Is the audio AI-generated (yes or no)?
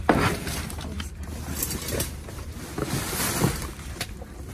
yes